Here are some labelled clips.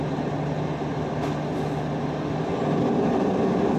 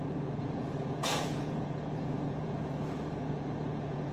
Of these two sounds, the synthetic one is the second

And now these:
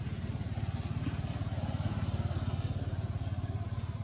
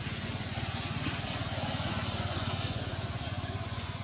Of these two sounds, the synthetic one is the second